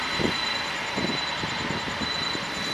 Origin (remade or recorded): remade